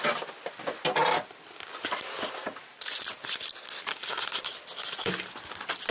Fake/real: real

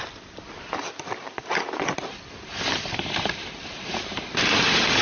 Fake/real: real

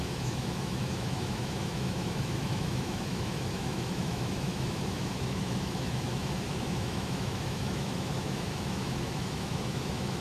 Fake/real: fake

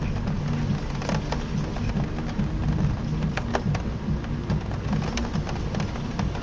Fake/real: real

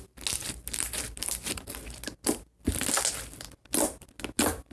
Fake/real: real